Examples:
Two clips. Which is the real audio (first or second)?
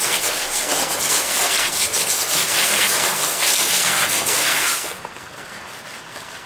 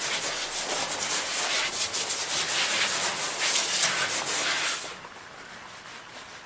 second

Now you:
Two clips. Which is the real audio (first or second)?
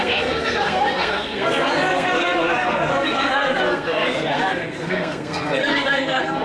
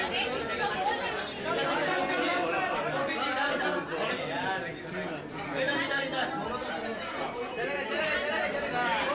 second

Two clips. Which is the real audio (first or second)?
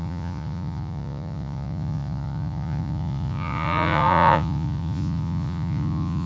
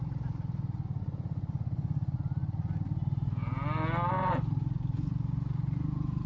second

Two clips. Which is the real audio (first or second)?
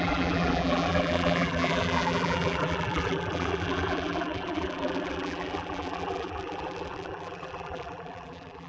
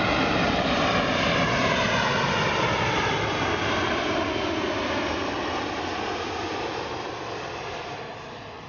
second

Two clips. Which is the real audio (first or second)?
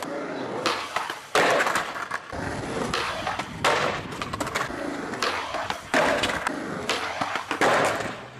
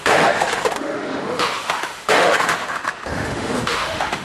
first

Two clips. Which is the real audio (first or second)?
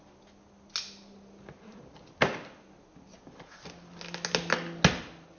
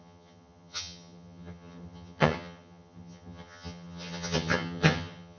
first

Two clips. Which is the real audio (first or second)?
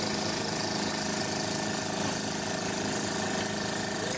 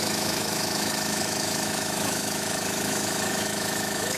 first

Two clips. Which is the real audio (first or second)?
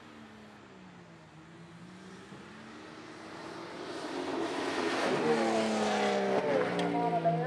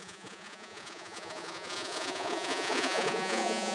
first